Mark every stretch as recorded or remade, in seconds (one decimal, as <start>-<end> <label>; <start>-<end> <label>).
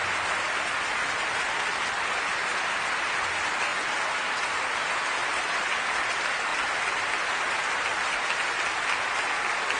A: 0.0-9.8 recorded